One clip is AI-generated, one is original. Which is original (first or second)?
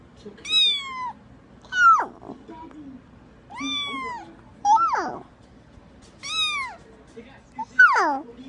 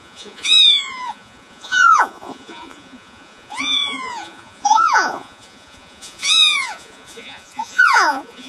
first